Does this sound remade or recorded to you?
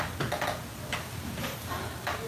recorded